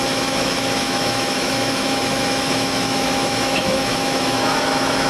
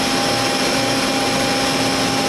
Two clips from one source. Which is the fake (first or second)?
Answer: first